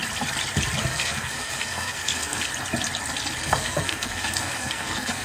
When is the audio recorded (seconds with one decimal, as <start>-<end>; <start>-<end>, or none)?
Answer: 0.0-0.8; 2.5-3.4